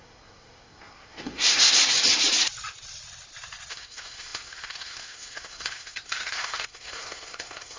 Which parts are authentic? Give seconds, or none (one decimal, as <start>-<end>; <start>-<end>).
1.8-3.7